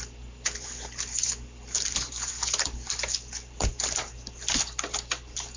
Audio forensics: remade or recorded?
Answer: recorded